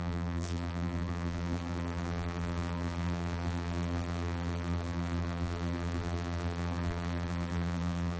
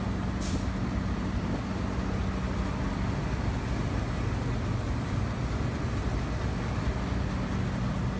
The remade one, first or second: first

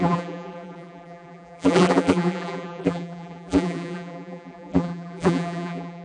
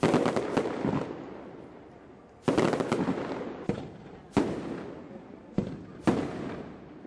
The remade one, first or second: first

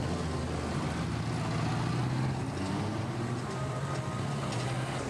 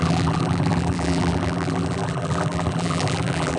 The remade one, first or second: second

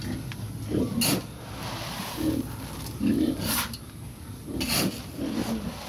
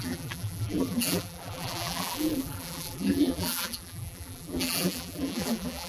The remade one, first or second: second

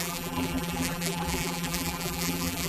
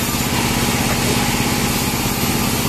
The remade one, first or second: first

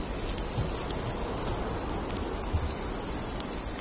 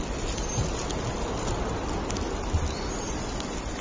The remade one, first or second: second